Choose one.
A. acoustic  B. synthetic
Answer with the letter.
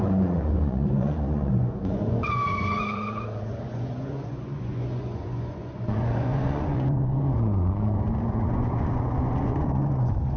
B